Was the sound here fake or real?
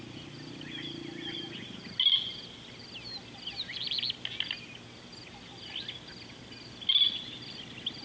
real